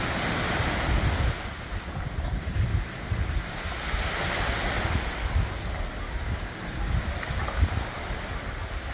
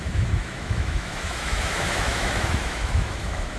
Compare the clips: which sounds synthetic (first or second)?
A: second